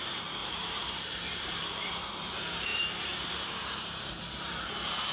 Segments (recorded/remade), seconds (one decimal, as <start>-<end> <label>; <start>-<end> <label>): 0.0-0.4 recorded; 0.4-2.3 remade; 2.3-2.7 recorded; 2.7-3.6 remade; 3.6-5.1 recorded